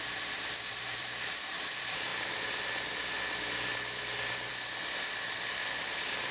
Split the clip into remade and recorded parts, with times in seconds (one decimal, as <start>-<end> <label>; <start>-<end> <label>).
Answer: 0.0-2.1 remade; 2.1-5.7 recorded; 5.7-6.3 remade